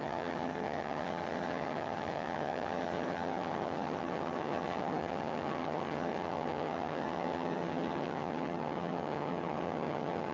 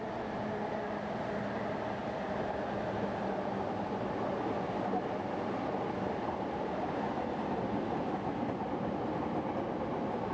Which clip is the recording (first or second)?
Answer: second